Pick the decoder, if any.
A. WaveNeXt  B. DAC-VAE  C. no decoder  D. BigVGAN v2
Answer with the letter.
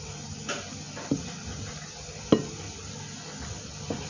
C